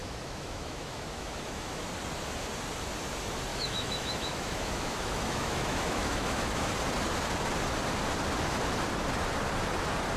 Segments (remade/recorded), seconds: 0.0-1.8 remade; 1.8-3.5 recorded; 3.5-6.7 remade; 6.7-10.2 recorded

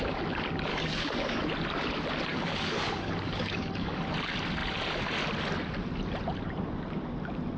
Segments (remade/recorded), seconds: 0.0-0.7 recorded; 0.7-1.4 remade; 1.4-2.3 recorded; 2.3-4.0 remade; 4.0-7.6 recorded